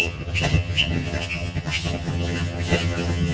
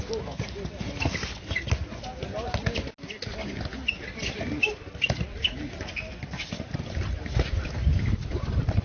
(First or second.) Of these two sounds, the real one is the second